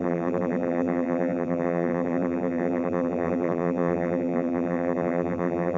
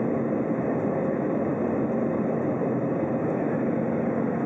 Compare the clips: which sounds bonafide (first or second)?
second